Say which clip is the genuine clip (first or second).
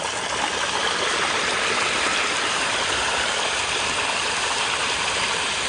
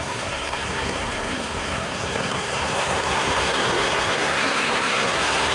first